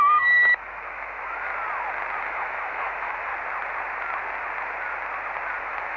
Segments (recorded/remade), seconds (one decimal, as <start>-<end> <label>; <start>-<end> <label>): 0.0-1.5 remade; 1.5-2.2 recorded; 2.2-3.3 remade; 3.3-5.6 recorded; 5.6-6.0 remade